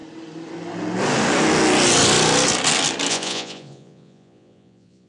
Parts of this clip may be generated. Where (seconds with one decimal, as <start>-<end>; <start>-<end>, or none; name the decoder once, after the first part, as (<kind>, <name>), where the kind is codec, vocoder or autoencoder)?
3.1-5.1 (vocoder, Vocos)